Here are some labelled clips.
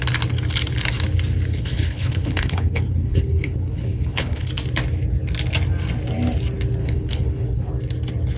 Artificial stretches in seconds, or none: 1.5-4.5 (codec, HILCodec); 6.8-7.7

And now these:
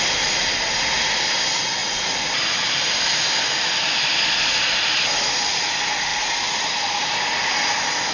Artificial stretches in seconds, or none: 6.1-7.1 (vocoder, BigVGAN v2)

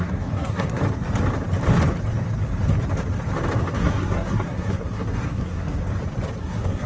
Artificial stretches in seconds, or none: 0.0-0.8 (codec, SNAC); 3.7-5.8; 6.4-6.9

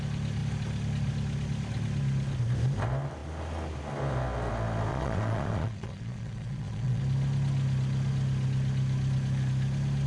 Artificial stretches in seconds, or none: 4.9-7.0 (vocoder, Vocos)

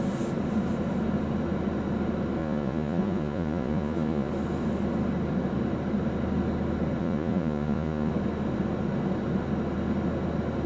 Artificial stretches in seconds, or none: 2.4-4.3 (vocoder, Vocos); 7.0-8.1

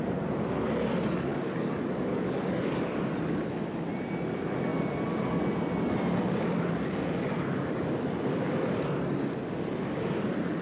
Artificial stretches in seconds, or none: 1.3-3.0 (codec, DAC)

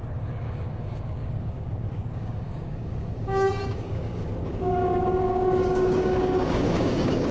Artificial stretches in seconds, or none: 0.0-7.3 (codec, DAC)